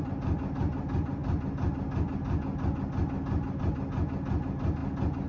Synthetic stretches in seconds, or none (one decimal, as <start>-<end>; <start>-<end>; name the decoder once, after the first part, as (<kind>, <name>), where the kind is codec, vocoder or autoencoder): none